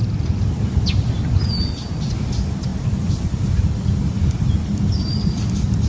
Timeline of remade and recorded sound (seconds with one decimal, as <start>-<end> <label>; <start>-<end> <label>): 0.0-5.9 recorded